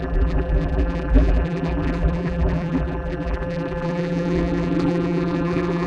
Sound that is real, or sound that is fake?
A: fake